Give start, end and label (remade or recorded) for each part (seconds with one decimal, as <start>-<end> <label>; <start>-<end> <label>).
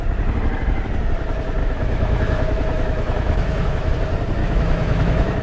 0.0-1.6 recorded; 1.6-3.9 remade; 3.9-4.4 recorded; 4.4-5.4 remade